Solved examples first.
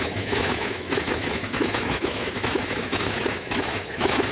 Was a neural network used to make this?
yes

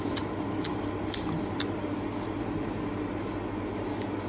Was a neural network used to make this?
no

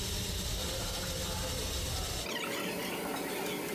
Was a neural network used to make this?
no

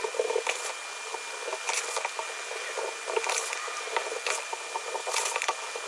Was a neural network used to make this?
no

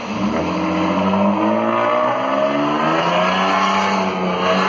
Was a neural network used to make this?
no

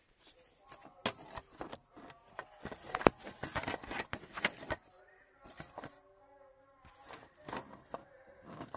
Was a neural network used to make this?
no